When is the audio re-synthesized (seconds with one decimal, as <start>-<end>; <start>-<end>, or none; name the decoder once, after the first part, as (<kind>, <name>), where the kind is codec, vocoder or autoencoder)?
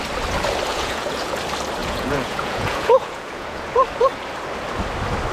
0.7-1.4 (vocoder, Vocos); 1.8-3.6